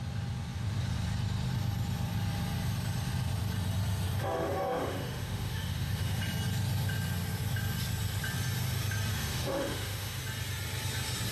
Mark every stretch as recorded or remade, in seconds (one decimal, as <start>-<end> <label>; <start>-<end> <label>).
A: 0.0-4.2 recorded; 4.2-6.2 remade; 6.2-9.1 recorded; 9.1-10.2 remade; 10.2-11.3 recorded